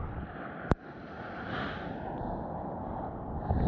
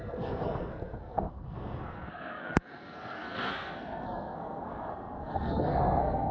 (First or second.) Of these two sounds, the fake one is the second